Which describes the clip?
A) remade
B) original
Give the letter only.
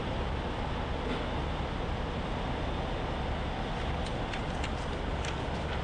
B